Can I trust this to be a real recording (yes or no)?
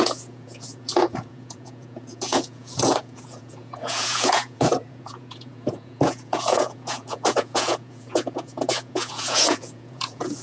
no